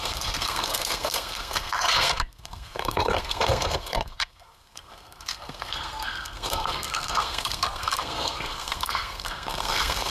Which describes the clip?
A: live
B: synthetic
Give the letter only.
B